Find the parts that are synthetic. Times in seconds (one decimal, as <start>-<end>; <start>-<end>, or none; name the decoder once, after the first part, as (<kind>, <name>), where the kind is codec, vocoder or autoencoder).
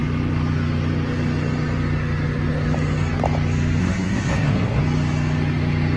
3.8-4.8 (codec, SNAC)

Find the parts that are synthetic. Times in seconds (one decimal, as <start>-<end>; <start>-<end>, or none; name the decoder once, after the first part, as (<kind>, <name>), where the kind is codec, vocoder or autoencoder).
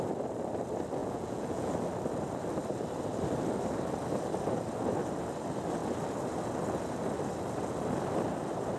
1.0-1.7 (vocoder, Vocos)